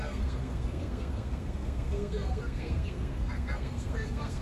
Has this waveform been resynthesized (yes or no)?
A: yes